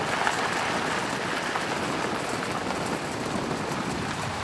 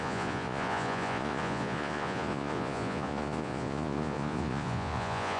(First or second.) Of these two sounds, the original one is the first